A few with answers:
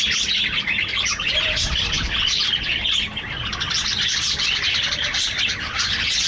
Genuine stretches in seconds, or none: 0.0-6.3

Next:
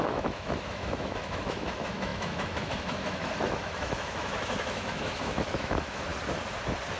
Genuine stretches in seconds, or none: 6.1-7.0

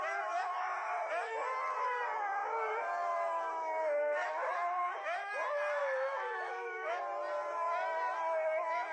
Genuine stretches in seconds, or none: 0.0-3.0; 4.5-5.8; 7.0-8.9

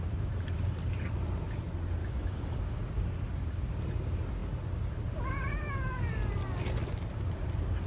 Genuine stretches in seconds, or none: 0.0-2.0; 2.6-7.9

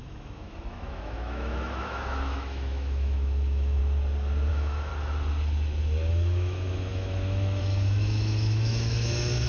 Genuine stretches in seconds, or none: 3.8-4.5; 4.9-6.1

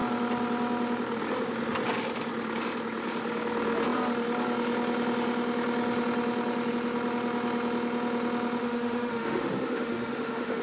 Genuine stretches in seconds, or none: 0.0-8.6

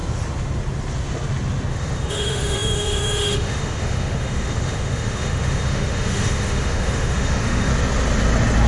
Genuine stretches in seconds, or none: 0.0-1.7; 7.7-8.7

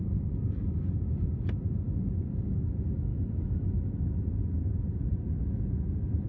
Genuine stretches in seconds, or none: 0.0-3.1; 3.7-6.3